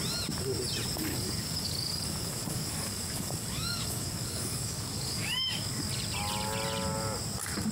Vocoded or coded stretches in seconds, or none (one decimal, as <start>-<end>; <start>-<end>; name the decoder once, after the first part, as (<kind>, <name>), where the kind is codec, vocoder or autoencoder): 1.1-5.7 (codec, DAC)